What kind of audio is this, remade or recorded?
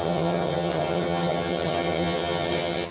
remade